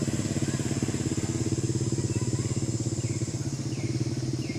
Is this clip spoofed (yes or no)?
no